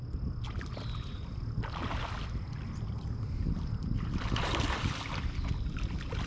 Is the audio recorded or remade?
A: recorded